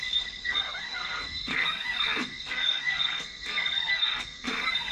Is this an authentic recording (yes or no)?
no